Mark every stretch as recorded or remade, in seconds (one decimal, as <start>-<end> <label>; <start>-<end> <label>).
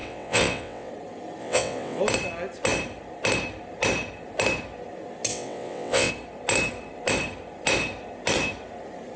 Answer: 0.0-0.9 remade; 0.9-1.4 recorded; 1.4-2.0 remade; 2.0-5.3 recorded; 5.3-6.1 remade; 6.1-9.2 recorded